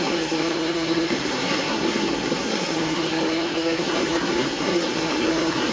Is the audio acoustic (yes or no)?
no